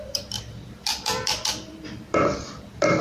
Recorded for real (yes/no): no